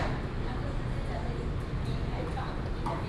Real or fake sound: real